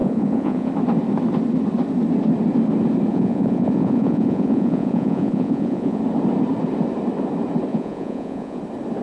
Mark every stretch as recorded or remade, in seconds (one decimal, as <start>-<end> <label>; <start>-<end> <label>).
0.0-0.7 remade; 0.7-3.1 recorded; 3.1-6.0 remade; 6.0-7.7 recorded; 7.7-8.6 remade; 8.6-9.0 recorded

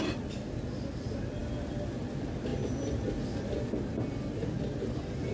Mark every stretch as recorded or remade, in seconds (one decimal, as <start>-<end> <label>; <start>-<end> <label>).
0.0-5.3 recorded

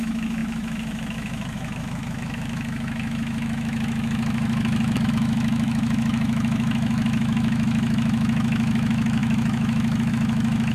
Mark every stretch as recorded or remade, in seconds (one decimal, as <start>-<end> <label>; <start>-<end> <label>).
0.0-10.7 remade

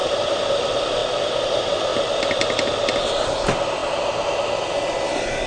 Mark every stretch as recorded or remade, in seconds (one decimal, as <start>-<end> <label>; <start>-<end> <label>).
0.0-0.6 recorded; 0.6-1.9 remade; 1.9-3.0 recorded; 3.0-3.8 remade; 3.8-5.5 recorded

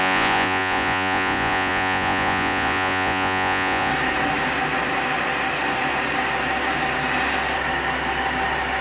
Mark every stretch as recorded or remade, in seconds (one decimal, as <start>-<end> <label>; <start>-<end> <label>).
0.0-3.9 remade; 3.9-8.8 recorded

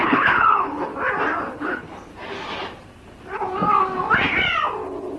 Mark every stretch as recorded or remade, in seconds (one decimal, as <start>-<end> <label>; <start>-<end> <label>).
0.0-0.9 remade; 0.9-1.5 recorded; 1.5-2.1 remade; 2.1-5.2 recorded